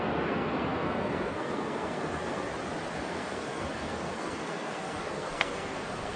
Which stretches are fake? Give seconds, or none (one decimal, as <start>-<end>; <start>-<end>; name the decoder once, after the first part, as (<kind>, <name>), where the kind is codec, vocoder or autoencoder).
0.0-2.5 (codec, SNAC); 3.0-6.2